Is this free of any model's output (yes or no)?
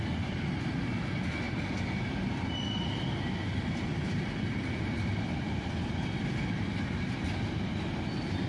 yes